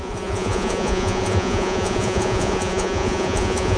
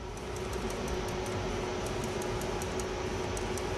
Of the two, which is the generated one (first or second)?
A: first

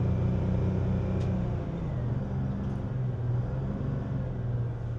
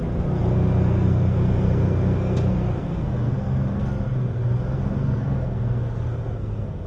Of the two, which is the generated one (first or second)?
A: second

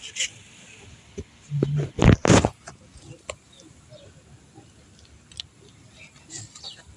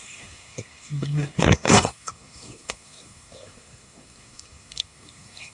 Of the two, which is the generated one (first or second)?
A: second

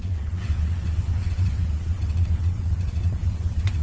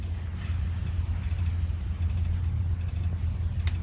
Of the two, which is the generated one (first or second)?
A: first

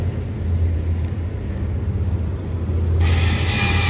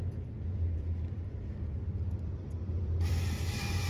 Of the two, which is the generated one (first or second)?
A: second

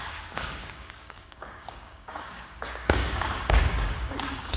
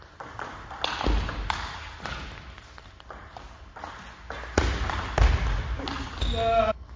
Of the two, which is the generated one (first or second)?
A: first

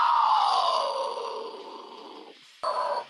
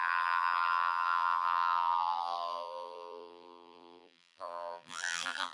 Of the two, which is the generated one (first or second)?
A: second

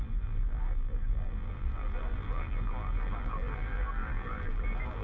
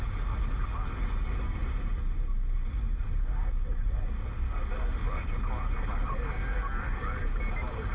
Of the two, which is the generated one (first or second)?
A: first